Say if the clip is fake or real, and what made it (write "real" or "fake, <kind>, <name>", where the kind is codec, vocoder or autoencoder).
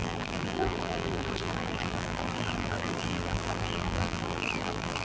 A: fake, vocoder, BigVGAN v2